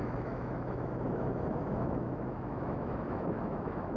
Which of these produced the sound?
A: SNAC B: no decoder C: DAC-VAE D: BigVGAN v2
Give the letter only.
C